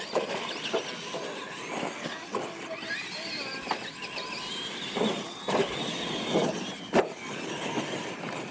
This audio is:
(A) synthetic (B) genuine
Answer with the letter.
B